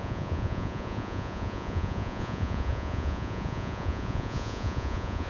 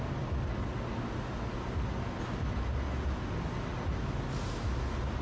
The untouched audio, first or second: second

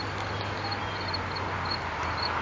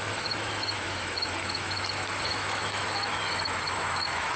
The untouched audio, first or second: first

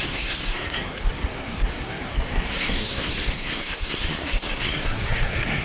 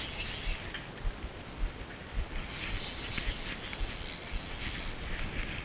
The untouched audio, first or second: second